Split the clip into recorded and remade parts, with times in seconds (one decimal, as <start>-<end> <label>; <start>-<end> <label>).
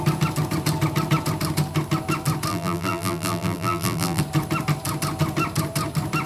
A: 0.0-2.5 recorded; 2.5-4.2 remade; 4.2-6.3 recorded